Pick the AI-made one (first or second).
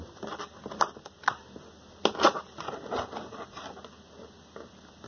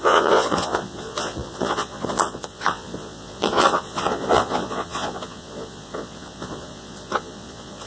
second